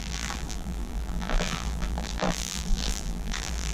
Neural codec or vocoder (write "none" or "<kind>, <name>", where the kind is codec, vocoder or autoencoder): vocoder, BigVGAN v2